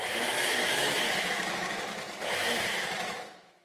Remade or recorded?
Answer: remade